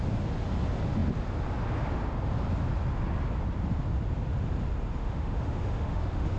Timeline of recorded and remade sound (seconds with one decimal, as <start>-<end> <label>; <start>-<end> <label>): 0.0-5.0 recorded; 5.0-6.4 remade